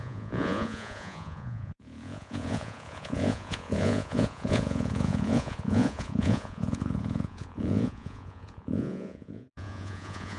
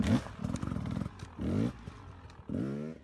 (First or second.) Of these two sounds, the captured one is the second